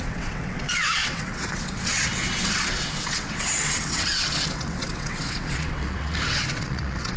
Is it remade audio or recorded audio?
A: remade